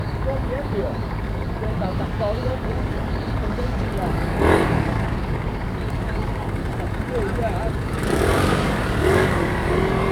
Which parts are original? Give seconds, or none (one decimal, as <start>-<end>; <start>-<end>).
6.6-7.7